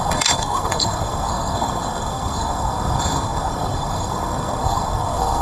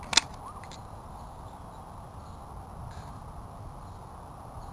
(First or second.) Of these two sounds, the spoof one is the first